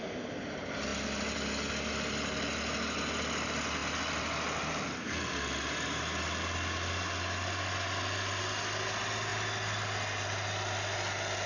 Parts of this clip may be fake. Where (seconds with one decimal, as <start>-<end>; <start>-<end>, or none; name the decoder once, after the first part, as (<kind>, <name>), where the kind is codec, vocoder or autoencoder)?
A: none